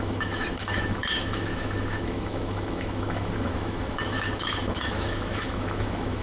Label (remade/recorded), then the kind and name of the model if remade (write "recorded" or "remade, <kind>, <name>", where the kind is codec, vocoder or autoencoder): remade, autoencoder, DAC-VAE